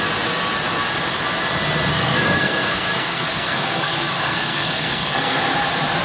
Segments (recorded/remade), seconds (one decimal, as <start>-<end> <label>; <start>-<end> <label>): 0.0-1.9 recorded; 1.9-5.4 remade; 5.4-6.0 recorded